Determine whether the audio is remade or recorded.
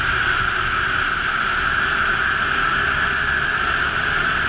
recorded